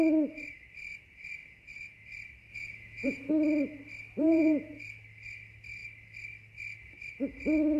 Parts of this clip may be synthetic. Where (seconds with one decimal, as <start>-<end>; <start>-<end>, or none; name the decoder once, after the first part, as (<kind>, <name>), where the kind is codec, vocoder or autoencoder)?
1.4-2.0 (vocoder, Vocos); 2.5-3.3; 4.2-4.8